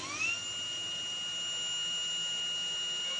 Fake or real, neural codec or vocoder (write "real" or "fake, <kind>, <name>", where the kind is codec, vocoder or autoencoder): real